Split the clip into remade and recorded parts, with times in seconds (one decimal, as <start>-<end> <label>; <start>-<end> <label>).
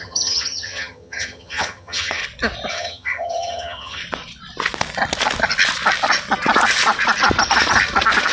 0.0-2.2 remade; 2.2-2.7 recorded; 2.7-4.0 remade; 4.0-8.3 recorded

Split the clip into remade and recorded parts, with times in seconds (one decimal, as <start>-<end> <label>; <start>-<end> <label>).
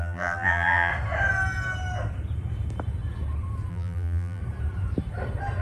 0.0-0.9 remade; 0.9-3.7 recorded; 3.7-4.4 remade; 4.4-5.6 recorded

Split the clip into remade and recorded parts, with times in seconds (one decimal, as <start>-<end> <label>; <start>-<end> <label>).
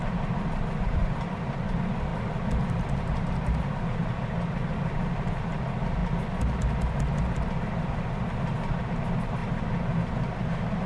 0.0-10.9 recorded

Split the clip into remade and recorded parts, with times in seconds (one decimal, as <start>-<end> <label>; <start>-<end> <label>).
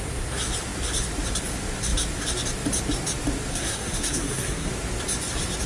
0.0-3.5 recorded; 3.5-4.7 remade; 4.7-5.7 recorded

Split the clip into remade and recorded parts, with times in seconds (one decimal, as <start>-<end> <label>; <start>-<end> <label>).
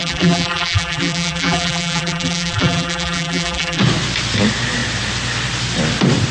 0.0-3.8 remade; 3.8-6.3 recorded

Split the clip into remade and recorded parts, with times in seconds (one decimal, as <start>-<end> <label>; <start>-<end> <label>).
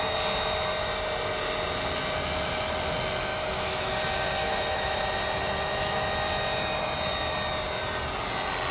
0.0-3.3 recorded; 3.3-3.9 remade; 3.9-4.4 recorded; 4.4-5.0 remade; 5.0-8.7 recorded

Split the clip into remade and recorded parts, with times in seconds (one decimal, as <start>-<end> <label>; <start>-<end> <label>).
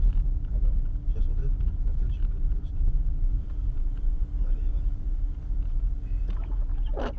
0.0-1.4 recorded; 1.4-5.2 remade; 5.2-7.2 recorded